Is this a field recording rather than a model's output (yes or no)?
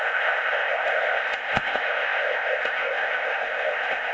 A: no